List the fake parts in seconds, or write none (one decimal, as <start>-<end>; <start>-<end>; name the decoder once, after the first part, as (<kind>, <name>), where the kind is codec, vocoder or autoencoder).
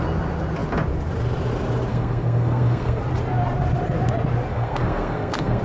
1.9-3.0 (codec, SNAC); 4.5-5.6